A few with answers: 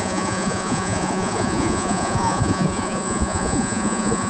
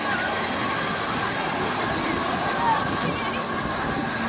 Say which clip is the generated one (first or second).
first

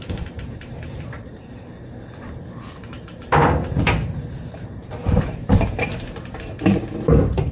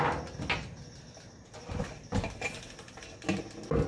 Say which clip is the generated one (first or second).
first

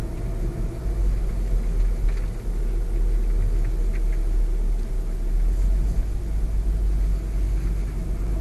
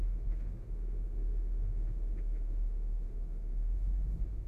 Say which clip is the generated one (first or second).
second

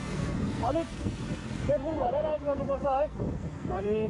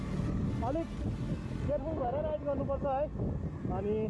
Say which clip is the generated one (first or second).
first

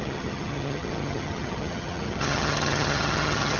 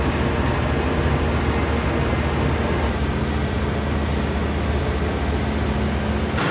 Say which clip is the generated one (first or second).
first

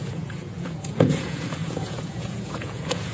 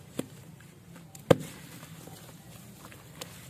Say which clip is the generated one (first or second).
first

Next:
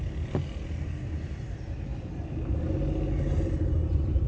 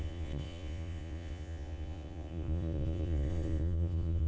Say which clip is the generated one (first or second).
second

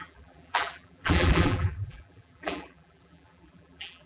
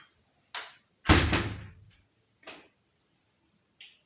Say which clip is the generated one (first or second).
first